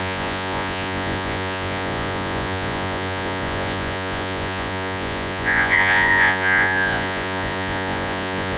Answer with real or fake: fake